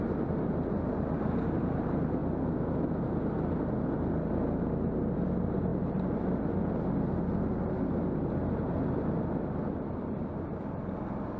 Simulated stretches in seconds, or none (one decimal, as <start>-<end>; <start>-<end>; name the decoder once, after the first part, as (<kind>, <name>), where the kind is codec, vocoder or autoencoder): none